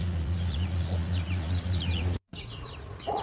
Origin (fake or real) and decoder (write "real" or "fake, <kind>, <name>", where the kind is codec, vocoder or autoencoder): fake, vocoder, Vocos